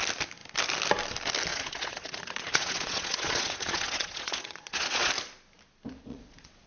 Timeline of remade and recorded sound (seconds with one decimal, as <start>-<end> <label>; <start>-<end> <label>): 0.0-1.5 recorded; 1.5-5.1 remade; 5.1-6.1 recorded; 6.1-6.7 remade